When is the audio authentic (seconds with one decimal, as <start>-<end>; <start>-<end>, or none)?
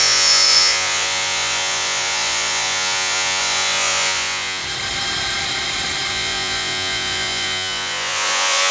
4.6-6.1